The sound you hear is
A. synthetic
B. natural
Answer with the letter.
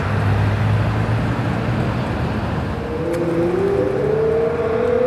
B